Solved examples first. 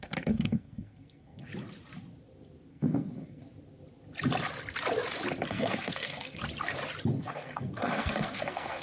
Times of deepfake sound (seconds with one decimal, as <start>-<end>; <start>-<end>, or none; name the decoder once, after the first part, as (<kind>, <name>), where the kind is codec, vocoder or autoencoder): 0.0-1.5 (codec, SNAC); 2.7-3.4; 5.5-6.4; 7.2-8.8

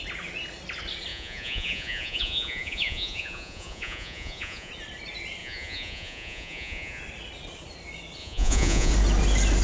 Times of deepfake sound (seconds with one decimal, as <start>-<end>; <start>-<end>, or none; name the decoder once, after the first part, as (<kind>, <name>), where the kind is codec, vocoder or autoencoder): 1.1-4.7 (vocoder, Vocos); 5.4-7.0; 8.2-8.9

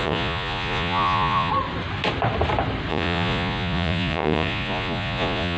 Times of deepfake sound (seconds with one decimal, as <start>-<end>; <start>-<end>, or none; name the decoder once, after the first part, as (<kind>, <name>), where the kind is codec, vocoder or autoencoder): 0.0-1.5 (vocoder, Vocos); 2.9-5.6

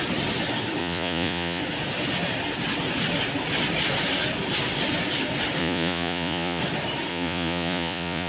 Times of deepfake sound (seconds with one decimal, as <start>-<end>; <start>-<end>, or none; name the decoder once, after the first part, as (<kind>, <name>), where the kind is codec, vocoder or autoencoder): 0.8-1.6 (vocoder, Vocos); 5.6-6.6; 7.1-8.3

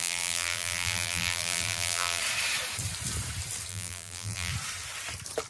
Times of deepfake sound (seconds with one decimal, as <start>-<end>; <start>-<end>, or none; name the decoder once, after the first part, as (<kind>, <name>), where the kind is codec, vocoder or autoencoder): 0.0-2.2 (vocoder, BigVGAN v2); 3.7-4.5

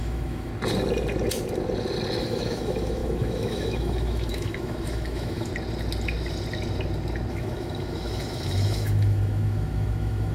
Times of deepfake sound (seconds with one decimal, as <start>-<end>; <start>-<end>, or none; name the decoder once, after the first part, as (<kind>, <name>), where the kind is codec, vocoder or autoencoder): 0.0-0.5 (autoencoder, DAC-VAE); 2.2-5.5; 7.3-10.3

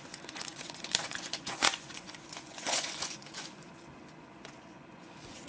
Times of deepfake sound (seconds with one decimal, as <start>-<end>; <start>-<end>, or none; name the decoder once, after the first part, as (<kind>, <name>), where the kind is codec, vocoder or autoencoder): 0.0-5.5 (vocoder, Vocos)

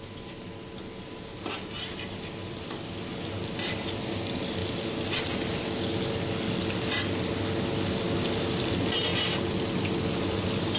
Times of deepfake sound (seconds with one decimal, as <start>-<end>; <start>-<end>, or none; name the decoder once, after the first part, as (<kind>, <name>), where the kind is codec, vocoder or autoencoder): none